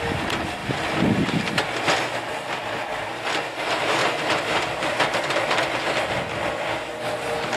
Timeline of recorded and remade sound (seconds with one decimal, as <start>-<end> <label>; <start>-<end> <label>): 0.0-4.0 recorded; 4.0-5.0 remade; 5.0-7.6 recorded